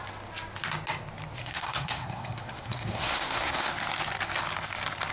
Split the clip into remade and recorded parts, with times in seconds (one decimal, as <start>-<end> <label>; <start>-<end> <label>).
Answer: 0.0-1.4 recorded; 1.4-3.7 remade; 3.7-5.1 recorded